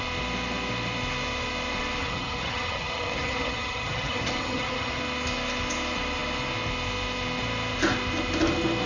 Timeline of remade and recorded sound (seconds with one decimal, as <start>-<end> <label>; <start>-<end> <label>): 0.0-2.0 recorded; 2.0-5.0 remade; 5.0-8.9 recorded